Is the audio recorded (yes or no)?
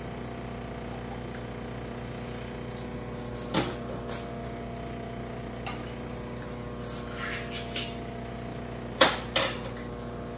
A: yes